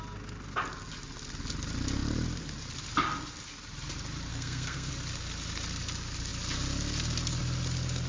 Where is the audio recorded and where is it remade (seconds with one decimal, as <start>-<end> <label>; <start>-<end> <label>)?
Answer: 0.0-4.3 recorded; 4.3-4.9 remade; 4.9-8.1 recorded